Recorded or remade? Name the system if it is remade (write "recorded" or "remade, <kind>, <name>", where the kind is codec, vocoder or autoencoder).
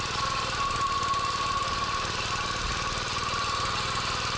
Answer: recorded